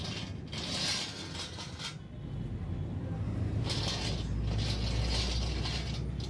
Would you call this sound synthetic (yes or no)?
no